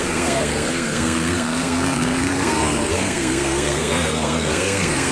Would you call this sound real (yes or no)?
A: no